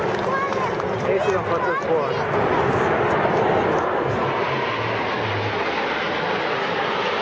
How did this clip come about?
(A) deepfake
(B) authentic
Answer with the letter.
B